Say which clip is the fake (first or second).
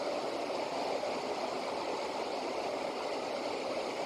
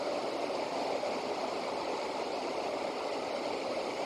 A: second